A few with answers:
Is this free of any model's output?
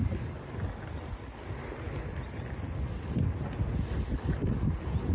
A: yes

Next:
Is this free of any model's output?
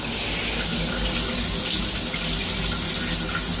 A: yes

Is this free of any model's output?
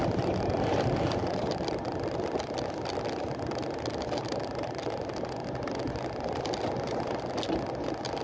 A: yes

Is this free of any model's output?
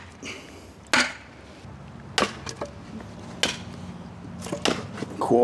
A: yes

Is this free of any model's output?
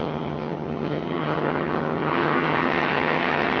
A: no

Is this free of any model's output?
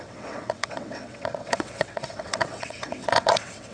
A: no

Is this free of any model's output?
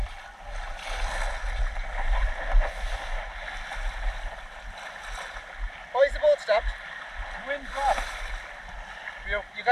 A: yes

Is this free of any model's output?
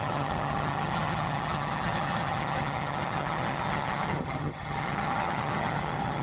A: no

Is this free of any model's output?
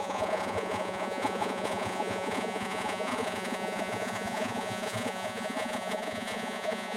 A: no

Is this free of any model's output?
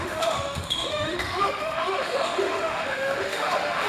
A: no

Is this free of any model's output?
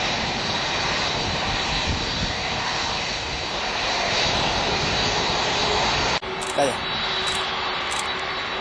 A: yes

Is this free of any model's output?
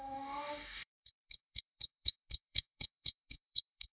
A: no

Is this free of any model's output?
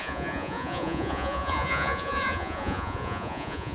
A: no